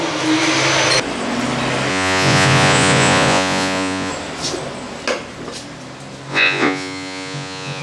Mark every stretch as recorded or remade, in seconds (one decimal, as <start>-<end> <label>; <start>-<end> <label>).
0.0-1.9 recorded; 1.9-4.1 remade; 4.1-6.3 recorded; 6.3-7.8 remade